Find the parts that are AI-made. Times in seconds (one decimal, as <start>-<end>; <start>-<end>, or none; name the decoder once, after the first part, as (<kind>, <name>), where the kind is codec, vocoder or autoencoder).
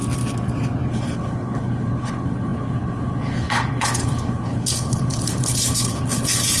0.9-6.6 (codec, HILCodec)